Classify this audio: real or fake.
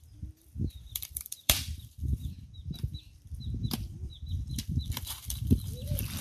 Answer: fake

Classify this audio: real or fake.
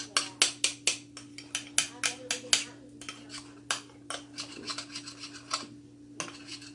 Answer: real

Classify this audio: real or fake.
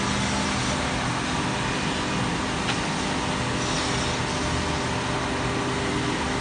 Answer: real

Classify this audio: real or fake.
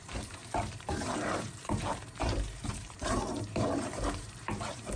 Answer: fake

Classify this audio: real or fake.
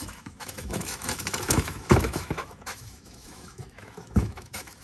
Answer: fake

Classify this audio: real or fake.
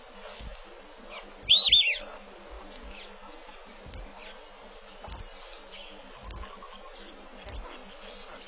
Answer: real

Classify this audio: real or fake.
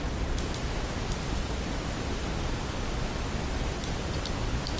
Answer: real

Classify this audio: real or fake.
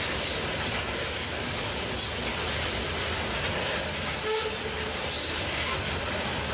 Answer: real